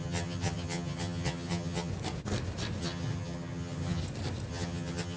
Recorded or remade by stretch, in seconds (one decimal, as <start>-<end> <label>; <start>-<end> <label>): 0.0-1.9 remade; 1.9-2.8 recorded; 2.8-4.0 remade; 4.0-4.5 recorded; 4.5-5.2 remade